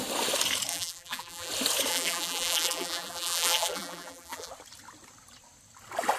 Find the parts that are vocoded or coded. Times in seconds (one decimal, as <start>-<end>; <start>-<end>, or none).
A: 0.7-1.5; 1.9-4.5